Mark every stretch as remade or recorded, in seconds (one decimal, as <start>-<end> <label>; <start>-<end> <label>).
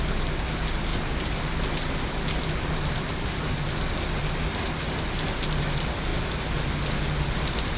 0.0-7.8 recorded